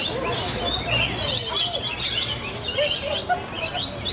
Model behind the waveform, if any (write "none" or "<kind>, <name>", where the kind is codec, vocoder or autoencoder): none